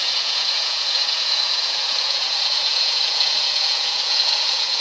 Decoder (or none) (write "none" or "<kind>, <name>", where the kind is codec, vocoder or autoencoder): vocoder, Vocos